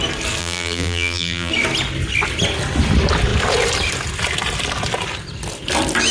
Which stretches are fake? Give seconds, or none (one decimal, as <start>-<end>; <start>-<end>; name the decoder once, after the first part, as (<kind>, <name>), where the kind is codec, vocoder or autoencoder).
0.4-1.5 (vocoder, BigVGAN v2)